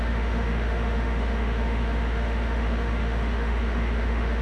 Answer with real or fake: fake